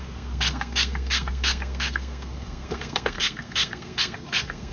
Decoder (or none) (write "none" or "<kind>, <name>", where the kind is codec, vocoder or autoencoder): codec, SNAC